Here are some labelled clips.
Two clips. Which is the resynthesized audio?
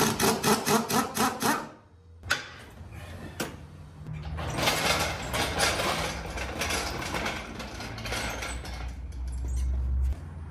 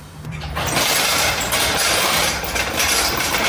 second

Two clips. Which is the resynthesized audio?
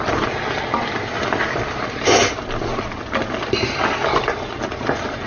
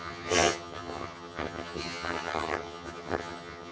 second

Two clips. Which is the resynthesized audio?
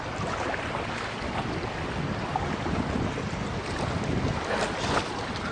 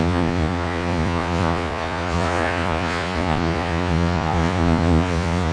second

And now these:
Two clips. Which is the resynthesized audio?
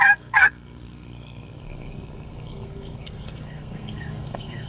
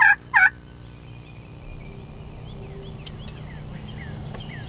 first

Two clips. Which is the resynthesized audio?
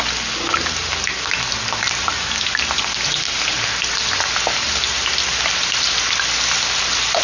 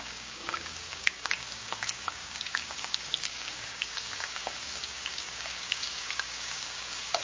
second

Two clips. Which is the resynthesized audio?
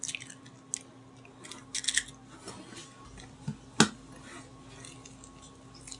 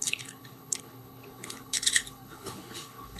second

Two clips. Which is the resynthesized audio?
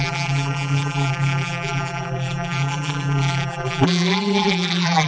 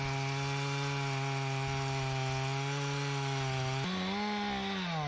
first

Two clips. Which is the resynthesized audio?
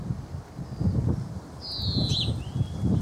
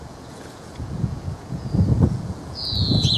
second